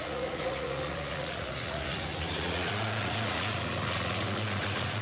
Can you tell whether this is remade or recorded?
remade